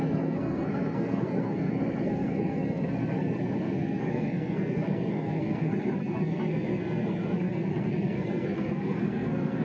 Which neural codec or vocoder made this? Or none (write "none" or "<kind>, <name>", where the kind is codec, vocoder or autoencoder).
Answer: codec, SNAC